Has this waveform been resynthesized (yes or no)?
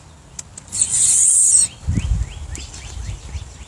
no